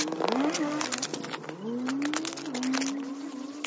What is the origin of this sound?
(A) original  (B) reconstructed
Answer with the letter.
A